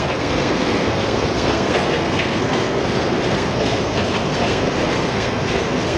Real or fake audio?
fake